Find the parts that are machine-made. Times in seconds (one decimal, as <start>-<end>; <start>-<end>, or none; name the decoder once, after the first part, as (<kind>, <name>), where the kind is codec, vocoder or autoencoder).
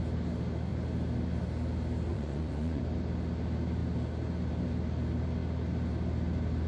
2.1-2.8 (vocoder, Vocos)